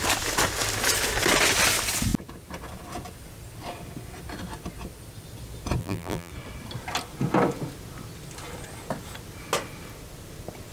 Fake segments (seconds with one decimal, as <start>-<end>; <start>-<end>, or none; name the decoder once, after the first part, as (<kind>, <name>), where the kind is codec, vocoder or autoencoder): 5.8-6.3 (vocoder, BigVGAN v2)